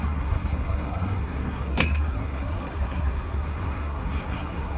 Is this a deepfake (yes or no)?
yes